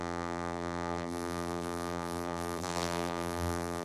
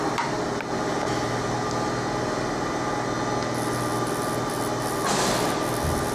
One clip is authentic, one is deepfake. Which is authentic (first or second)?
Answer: second